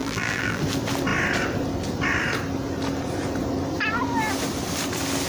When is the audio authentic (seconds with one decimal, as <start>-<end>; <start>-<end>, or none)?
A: 0.6-5.3